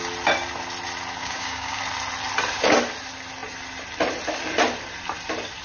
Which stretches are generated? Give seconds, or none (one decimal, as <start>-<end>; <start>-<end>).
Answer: 1.2-1.8